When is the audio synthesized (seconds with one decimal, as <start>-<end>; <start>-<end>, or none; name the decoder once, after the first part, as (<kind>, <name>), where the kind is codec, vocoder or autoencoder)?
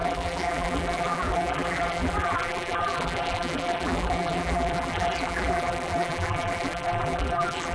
0.0-7.7 (vocoder, BigVGAN v2)